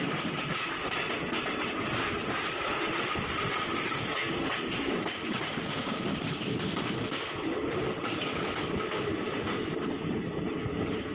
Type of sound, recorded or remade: recorded